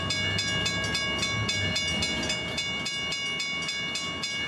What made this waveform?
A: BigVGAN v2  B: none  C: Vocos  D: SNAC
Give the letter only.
B